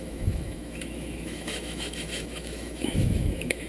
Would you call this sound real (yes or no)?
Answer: no